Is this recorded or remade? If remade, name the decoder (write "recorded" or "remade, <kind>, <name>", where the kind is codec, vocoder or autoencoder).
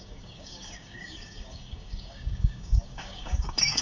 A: remade, codec, DAC